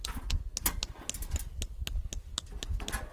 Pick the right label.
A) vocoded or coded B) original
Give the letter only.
B